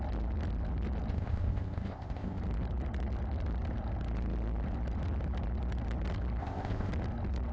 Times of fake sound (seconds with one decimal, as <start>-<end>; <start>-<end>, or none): 1.1-2.4; 6.4-6.9